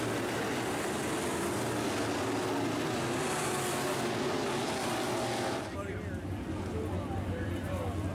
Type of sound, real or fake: real